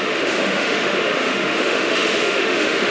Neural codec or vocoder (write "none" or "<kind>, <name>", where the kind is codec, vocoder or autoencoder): autoencoder, DAC-VAE